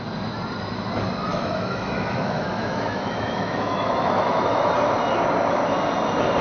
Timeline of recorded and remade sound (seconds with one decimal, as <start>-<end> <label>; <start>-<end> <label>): 0.0-1.3 recorded; 1.3-4.7 remade; 4.7-6.4 recorded